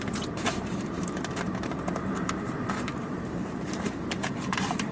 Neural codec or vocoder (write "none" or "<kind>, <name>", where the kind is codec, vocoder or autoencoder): vocoder, BigVGAN v2